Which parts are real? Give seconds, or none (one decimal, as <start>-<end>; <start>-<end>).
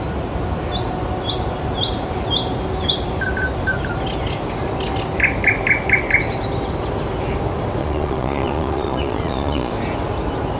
0.0-7.8; 9.7-10.6